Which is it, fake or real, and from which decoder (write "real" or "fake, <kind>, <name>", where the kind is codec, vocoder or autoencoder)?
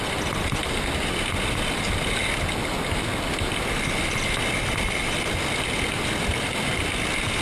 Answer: real